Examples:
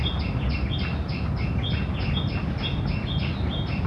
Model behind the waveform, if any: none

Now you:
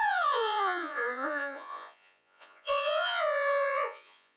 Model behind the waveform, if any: vocoder, Vocos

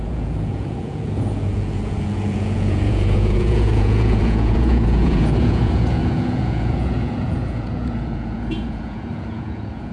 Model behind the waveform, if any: vocoder, Vocos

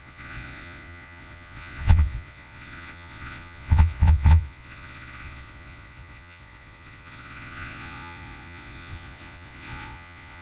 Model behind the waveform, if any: vocoder, Vocos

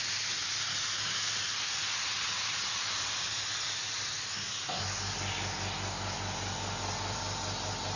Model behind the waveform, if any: none